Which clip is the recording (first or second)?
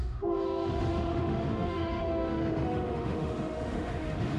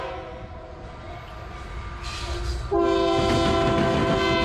second